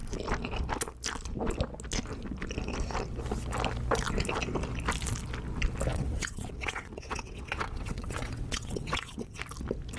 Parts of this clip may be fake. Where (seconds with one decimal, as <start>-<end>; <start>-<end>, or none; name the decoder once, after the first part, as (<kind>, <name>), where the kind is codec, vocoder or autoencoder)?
5.9-9.4 (vocoder, WaveNeXt)